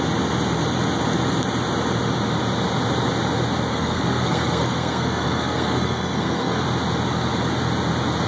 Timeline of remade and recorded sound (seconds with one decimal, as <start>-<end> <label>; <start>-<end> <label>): 0.0-3.7 recorded; 3.7-6.6 remade; 6.6-8.3 recorded